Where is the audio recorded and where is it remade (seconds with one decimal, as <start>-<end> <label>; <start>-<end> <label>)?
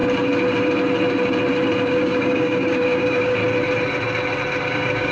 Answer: 0.0-1.9 recorded; 1.9-3.4 remade; 3.4-4.6 recorded; 4.6-5.1 remade